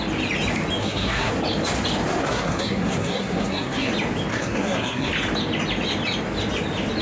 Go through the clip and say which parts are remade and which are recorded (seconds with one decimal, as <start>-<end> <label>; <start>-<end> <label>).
0.0-0.8 recorded; 0.8-1.3 remade; 1.3-2.2 recorded; 2.2-3.9 remade; 3.9-4.3 recorded; 4.3-5.1 remade; 5.1-7.0 recorded